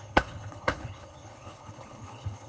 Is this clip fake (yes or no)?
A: yes